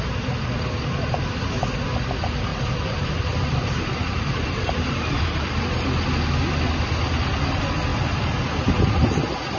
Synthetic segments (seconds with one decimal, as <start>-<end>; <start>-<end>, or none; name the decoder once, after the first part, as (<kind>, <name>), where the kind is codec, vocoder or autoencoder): 2.5-5.6 (vocoder, BigVGAN v2)